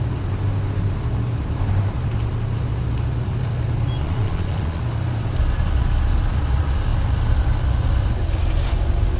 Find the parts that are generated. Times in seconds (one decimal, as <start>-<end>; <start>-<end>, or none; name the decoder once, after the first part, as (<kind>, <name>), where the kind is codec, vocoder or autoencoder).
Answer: 4.0-4.8 (vocoder, Vocos)